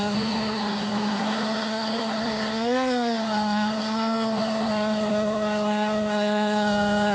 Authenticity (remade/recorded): remade